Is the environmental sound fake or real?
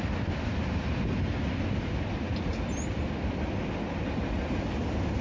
real